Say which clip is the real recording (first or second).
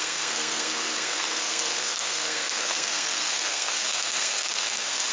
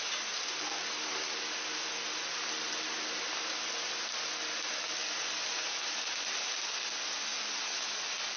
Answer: second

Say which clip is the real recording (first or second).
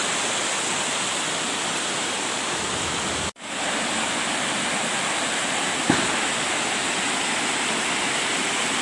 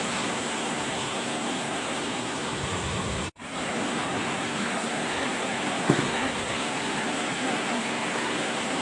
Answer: first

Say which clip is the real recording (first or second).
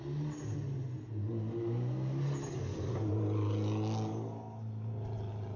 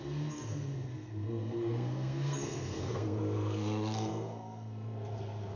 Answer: first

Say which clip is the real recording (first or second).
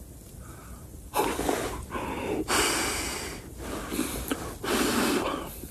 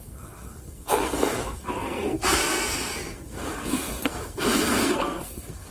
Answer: first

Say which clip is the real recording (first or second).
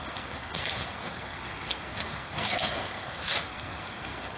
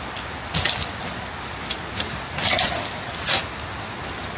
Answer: second